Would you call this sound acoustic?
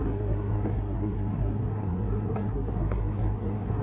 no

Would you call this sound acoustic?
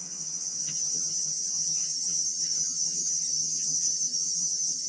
no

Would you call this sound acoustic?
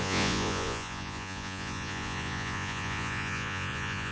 no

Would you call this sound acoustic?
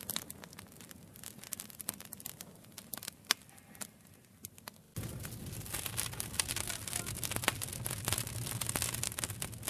yes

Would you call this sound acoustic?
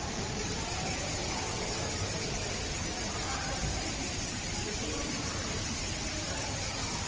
no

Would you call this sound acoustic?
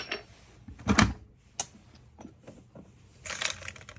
yes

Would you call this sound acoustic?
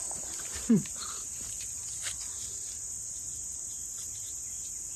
yes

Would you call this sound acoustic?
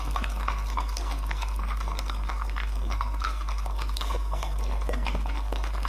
no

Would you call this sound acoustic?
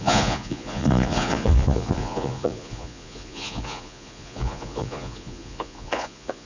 no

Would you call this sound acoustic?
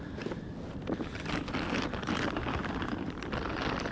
yes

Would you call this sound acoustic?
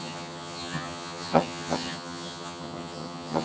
no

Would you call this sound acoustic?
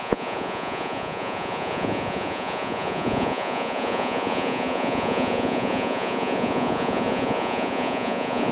no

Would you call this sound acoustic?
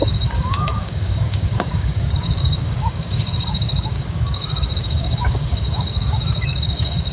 no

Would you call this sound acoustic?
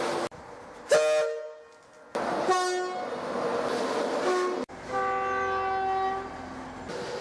yes